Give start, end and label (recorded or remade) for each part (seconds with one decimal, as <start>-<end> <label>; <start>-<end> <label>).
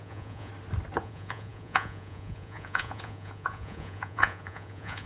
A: 0.0-0.5 remade; 0.5-1.0 recorded; 1.0-5.1 remade